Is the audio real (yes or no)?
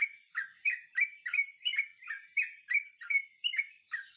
no